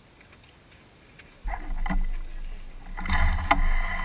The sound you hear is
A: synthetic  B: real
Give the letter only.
B